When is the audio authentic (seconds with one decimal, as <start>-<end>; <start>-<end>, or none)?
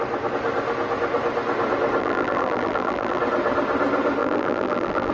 0.0-2.0; 3.2-4.2